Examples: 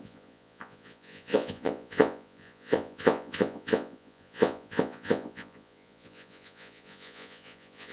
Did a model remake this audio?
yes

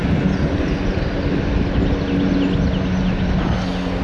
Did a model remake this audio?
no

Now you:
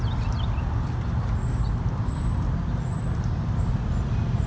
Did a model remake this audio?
no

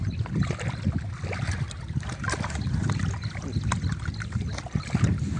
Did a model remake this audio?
no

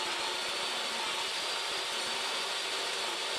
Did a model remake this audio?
no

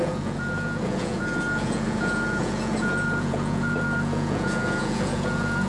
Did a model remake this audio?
yes